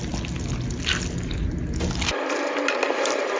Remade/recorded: recorded